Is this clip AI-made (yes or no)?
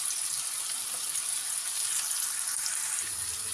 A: no